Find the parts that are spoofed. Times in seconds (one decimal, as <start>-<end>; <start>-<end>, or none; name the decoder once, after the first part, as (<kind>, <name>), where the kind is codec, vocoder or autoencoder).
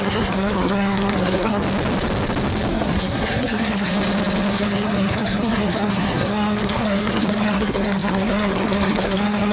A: 0.0-1.6 (codec, SNAC); 2.7-3.9; 4.5-9.5